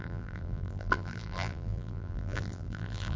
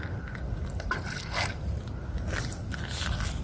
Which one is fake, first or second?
first